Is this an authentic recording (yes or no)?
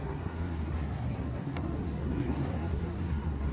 no